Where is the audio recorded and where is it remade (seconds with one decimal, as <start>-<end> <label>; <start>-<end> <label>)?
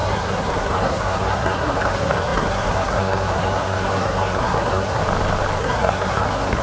0.0-5.0 remade; 5.0-5.6 recorded; 5.6-6.6 remade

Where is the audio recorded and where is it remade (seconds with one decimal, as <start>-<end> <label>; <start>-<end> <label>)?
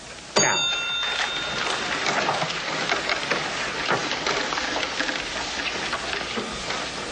0.0-7.1 recorded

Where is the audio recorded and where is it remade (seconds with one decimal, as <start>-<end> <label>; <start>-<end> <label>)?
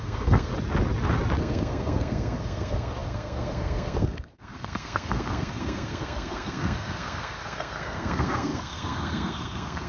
0.0-0.5 remade; 0.5-1.4 recorded; 1.4-9.9 remade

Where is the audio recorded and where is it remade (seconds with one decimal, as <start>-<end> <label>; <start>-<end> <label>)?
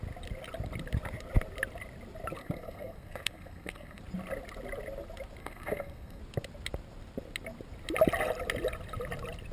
0.0-2.4 recorded; 2.4-4.0 remade; 4.0-5.4 recorded; 5.4-6.2 remade; 6.2-9.5 recorded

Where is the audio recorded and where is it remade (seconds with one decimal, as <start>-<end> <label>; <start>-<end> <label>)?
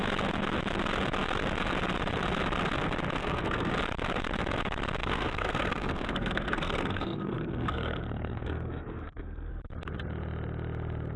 0.0-3.2 recorded; 3.2-3.7 remade; 3.7-5.0 recorded; 5.0-9.5 remade; 9.5-11.2 recorded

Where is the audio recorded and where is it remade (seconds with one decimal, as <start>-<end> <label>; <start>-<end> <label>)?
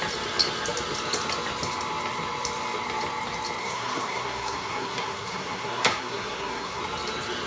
0.0-3.6 recorded; 3.6-6.8 remade; 6.8-7.5 recorded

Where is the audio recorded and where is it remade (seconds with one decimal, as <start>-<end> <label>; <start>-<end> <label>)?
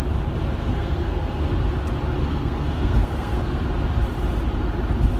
0.0-0.6 recorded; 0.6-1.5 remade; 1.5-2.2 recorded; 2.2-3.6 remade; 3.6-5.2 recorded